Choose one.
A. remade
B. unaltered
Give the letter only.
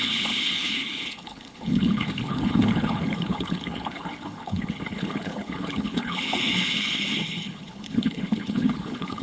A